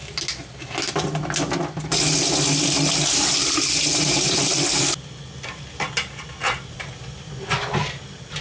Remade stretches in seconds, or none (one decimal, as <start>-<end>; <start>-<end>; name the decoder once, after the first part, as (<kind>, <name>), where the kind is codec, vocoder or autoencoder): none